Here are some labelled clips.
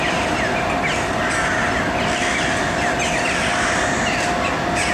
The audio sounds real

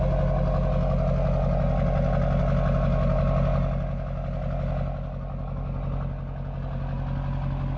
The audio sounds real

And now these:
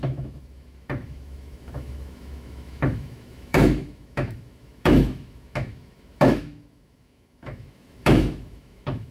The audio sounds fake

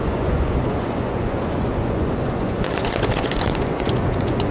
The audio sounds fake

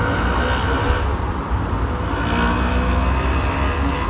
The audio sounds real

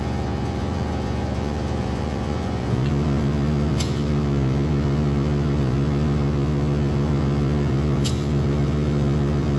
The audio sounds fake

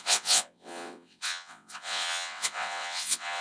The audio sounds fake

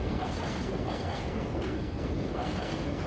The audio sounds fake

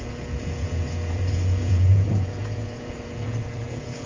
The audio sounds fake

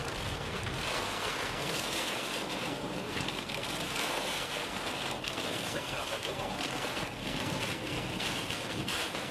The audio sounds fake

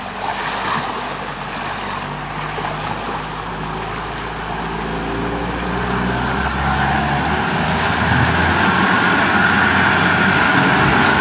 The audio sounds real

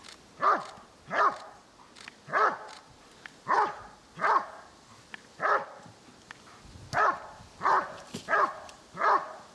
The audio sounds real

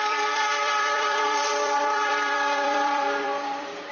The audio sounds fake